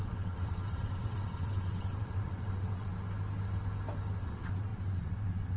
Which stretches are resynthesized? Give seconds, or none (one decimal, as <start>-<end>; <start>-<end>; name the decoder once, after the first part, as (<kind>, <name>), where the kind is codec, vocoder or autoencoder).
0.0-2.9 (vocoder, WaveNeXt); 4.2-5.6